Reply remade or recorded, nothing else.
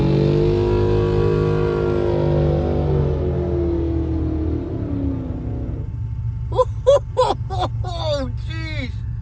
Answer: recorded